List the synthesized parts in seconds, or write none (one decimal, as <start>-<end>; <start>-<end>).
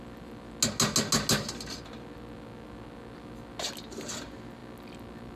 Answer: none